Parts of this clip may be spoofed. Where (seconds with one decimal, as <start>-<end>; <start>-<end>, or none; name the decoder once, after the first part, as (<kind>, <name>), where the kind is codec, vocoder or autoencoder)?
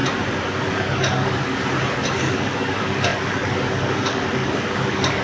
0.7-1.6 (codec, DAC); 2.2-5.2